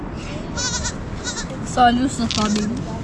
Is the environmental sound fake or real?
real